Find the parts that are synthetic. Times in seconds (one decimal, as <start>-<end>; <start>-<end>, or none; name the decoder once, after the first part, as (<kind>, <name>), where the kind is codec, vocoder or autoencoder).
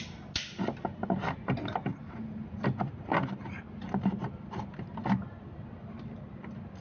none